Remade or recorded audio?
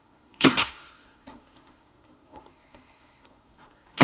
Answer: remade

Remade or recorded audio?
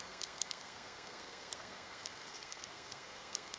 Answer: remade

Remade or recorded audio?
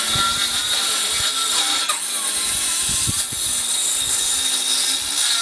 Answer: recorded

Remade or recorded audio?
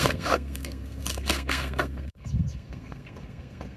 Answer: remade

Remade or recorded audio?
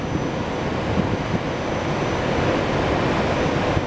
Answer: recorded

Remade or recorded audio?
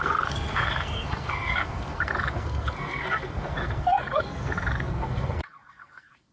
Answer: remade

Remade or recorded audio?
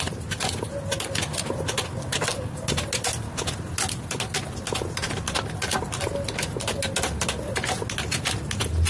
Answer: recorded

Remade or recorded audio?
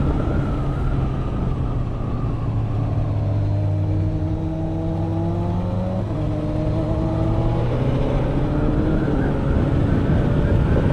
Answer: recorded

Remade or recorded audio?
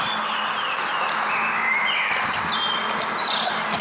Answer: recorded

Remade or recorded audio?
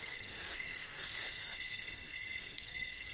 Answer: remade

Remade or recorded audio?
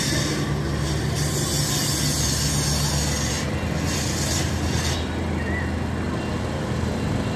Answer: recorded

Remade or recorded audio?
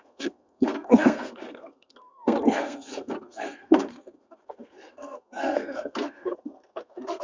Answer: remade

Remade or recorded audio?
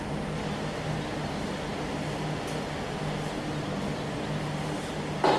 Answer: recorded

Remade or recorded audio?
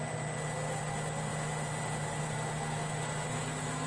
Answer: recorded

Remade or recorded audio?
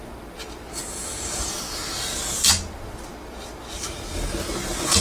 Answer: recorded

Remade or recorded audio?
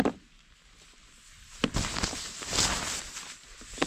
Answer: recorded